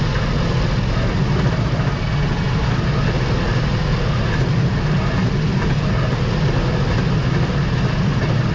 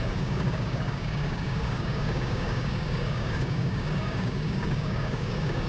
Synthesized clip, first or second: second